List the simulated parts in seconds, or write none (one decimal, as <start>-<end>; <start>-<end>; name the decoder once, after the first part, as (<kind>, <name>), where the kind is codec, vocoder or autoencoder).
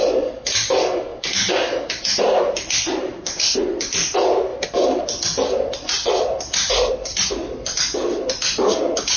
0.0-1.1 (vocoder, BigVGAN v2); 1.9-9.2